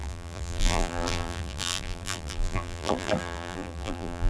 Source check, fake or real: fake